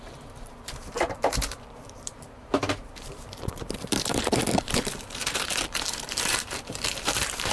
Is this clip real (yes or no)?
no